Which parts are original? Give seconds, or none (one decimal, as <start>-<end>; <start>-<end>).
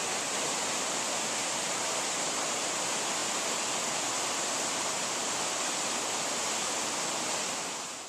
0.0-1.4; 2.3-8.1